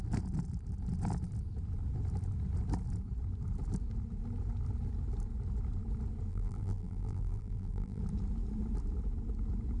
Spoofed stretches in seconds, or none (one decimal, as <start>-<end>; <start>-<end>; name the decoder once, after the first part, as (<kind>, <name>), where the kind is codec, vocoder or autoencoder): 6.3-8.0 (vocoder, BigVGAN v2)